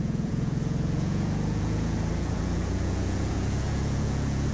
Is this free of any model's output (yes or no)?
no